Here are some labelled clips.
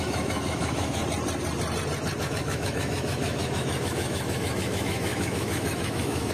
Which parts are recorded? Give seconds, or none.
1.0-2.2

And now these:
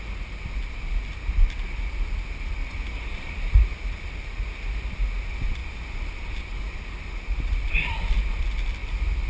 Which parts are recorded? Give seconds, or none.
0.0-2.6; 3.8-5.6; 6.4-8.8

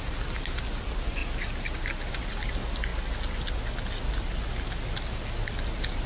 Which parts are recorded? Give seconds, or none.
0.0-6.1

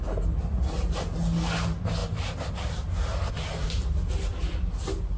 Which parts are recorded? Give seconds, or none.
0.0-5.2

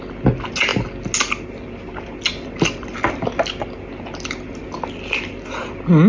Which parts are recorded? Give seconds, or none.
0.0-6.1